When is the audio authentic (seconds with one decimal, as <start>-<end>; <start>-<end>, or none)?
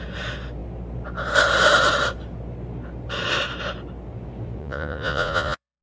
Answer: 0.0-4.6